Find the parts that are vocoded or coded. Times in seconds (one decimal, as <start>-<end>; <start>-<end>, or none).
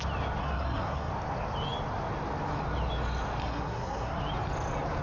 0.4-1.1; 3.4-4.2